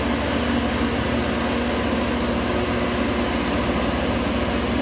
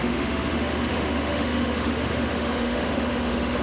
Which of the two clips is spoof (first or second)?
second